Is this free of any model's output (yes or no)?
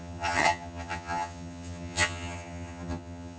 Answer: no